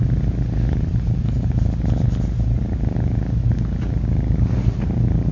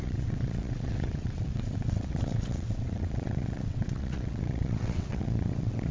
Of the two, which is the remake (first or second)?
second